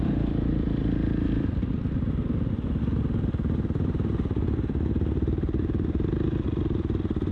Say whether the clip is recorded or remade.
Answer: remade